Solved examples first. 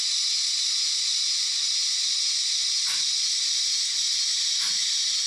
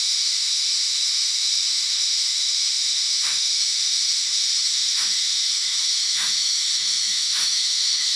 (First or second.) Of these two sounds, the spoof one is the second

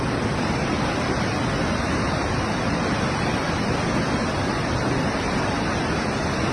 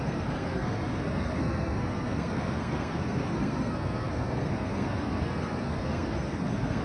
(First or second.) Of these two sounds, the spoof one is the second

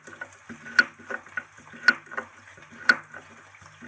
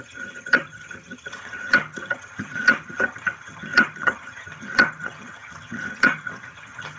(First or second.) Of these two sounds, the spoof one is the second